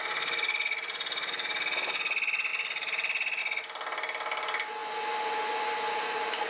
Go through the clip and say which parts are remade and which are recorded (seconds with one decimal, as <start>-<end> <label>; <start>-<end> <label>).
0.0-2.5 recorded; 2.5-3.4 remade; 3.4-6.5 recorded